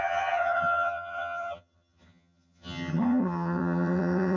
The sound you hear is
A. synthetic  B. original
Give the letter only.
A